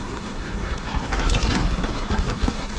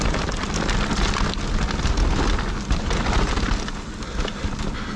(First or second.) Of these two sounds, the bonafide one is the second